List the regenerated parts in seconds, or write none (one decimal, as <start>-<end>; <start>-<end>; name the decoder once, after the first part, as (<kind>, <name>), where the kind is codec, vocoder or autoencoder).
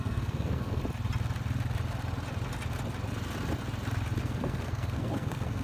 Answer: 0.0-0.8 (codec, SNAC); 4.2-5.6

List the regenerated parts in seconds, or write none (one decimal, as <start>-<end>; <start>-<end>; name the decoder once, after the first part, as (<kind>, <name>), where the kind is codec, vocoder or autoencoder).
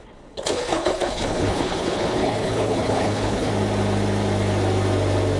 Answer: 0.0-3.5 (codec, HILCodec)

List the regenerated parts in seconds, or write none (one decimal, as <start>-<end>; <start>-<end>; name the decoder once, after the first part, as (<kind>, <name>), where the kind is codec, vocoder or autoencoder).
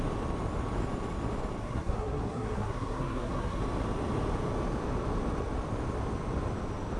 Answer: 1.6-3.6 (codec, SNAC)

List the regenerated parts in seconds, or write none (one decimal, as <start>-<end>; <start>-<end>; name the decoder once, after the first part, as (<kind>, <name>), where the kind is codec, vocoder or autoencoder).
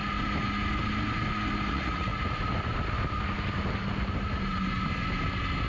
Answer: 1.7-2.1 (vocoder, Vocos)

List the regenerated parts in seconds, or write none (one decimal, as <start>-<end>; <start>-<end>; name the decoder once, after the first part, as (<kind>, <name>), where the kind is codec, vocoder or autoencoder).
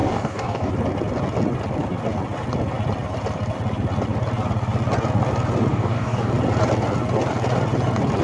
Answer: 0.0-0.7 (codec, DAC); 5.7-6.3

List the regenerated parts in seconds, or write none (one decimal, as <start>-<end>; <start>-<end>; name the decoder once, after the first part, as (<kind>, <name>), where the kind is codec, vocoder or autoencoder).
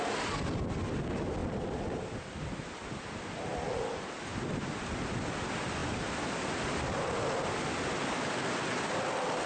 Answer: none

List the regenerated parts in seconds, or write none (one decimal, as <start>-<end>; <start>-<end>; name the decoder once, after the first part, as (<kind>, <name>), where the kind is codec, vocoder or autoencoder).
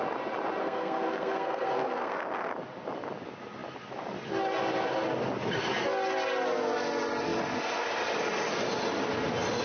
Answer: 0.6-2.2 (codec, SNAC)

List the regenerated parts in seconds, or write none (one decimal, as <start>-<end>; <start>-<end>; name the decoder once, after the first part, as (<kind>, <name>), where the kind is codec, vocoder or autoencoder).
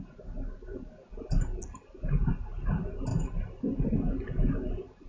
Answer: none